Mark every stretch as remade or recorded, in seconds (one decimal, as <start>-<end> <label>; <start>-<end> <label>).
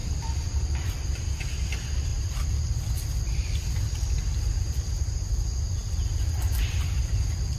0.0-1.2 remade; 1.2-2.1 recorded; 2.1-2.8 remade; 2.8-5.8 recorded; 5.8-7.6 remade